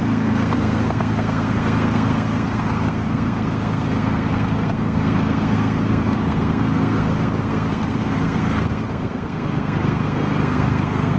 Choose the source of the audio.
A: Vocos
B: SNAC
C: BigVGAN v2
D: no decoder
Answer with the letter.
B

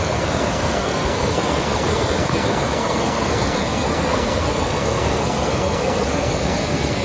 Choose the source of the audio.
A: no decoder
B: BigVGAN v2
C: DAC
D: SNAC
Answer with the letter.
D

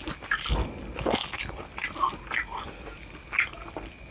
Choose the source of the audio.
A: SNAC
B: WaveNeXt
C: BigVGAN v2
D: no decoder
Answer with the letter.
D